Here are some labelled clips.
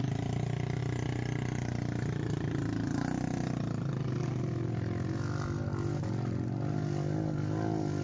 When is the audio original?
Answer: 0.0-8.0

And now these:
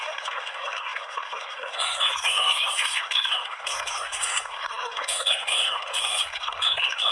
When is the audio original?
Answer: none

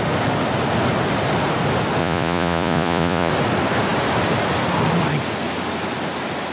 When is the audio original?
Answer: 0.0-2.0; 3.3-6.5